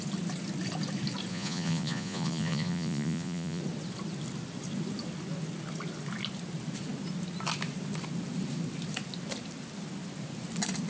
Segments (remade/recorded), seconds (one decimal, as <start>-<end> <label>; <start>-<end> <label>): 0.0-1.3 recorded; 1.3-3.6 remade; 3.6-10.9 recorded